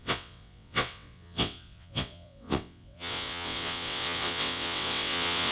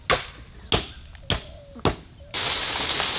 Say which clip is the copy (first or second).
first